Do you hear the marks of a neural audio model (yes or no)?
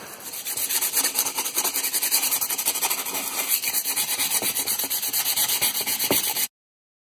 no